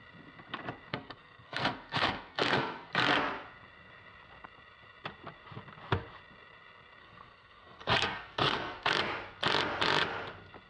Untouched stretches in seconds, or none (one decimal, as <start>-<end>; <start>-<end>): 0.0-0.9; 2.9-7.0; 8.9-10.7